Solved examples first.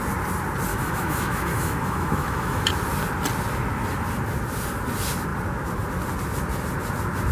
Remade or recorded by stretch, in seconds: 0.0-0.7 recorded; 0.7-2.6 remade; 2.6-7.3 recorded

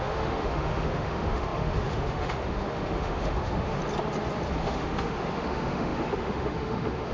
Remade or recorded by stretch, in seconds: 0.0-3.8 remade; 3.8-4.6 recorded; 4.6-7.1 remade

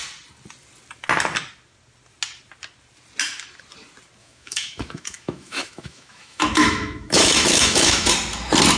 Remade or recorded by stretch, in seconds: 0.0-4.2 recorded; 4.2-8.1 remade; 8.1-8.8 recorded

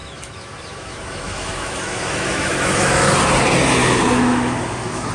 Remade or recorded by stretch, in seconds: 0.0-3.1 remade; 3.1-3.8 recorded; 3.8-5.1 remade

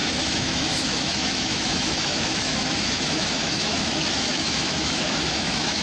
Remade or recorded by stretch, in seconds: 0.0-5.8 remade